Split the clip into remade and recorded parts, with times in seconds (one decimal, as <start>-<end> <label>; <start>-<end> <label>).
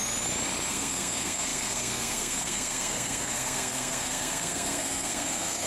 0.0-0.7 recorded; 0.7-5.7 remade